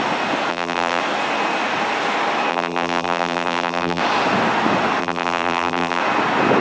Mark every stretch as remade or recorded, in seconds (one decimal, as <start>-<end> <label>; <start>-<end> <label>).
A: 0.0-0.5 recorded; 0.5-1.0 remade; 1.0-2.5 recorded; 2.5-4.0 remade; 4.0-5.0 recorded; 5.0-6.0 remade; 6.0-6.6 recorded